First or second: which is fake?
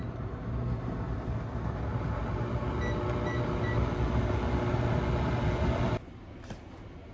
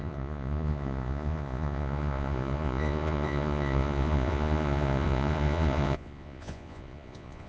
second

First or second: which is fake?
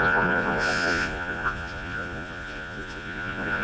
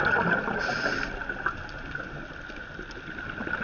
first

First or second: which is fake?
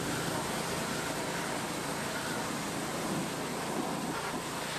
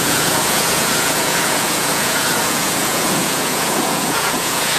second